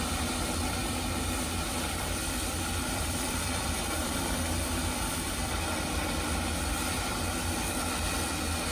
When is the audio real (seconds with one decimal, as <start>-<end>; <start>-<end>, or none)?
0.0-0.8; 5.5-8.7